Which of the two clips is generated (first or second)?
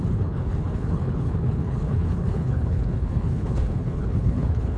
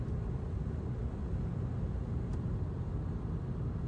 first